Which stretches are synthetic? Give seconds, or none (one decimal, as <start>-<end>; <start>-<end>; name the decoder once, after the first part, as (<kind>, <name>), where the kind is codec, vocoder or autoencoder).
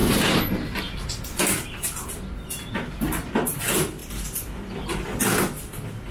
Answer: 4.0-5.2 (vocoder, BigVGAN v2)